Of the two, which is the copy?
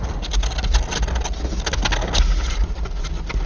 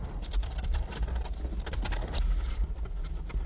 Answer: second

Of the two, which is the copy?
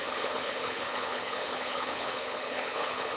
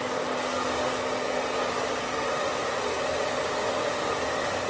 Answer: first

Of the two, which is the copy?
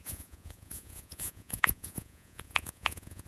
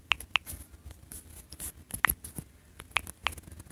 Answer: first